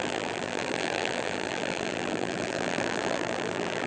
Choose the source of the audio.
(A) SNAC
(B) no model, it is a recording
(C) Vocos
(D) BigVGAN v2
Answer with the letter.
D